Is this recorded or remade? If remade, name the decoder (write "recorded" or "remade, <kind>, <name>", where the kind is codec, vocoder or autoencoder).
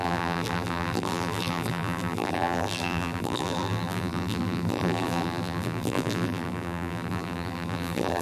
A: remade, vocoder, BigVGAN v2